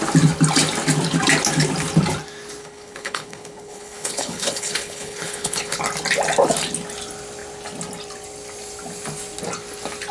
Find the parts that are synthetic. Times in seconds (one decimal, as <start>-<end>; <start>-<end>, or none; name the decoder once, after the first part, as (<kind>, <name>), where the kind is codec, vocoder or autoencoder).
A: 2.6-5.8 (codec, HILCodec)